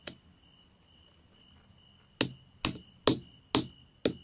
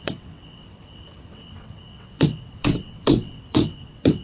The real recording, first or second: first